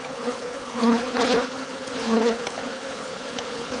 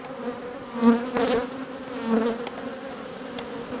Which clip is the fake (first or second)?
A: first